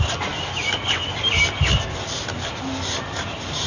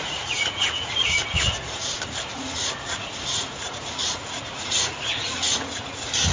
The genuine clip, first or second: first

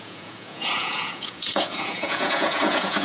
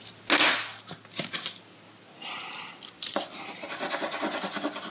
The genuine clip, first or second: second